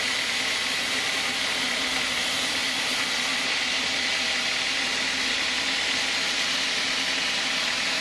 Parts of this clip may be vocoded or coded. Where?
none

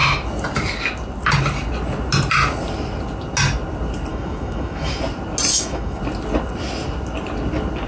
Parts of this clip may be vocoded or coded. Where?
4.1-5.0 (autoencoder, DAC-VAE); 5.5-6.0

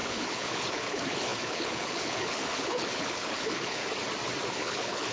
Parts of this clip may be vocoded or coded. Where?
0.0-3.8 (codec, HILCodec); 4.5-5.1

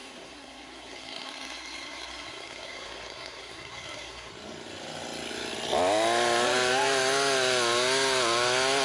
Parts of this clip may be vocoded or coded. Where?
0.0-4.3 (codec, SNAC)

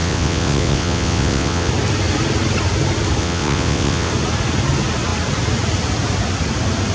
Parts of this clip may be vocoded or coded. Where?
0.0-1.7 (vocoder, WaveNeXt); 3.2-4.1